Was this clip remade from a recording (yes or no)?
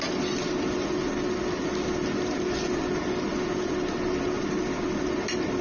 no